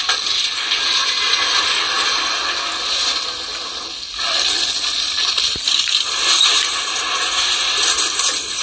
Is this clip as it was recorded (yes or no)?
yes